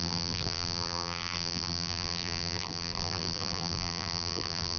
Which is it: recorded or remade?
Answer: remade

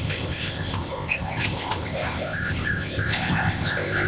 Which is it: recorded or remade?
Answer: remade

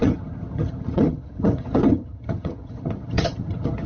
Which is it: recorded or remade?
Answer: remade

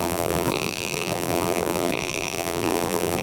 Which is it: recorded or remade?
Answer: remade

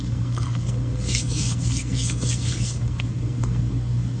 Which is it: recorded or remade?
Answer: remade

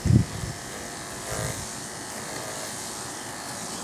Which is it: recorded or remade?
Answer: remade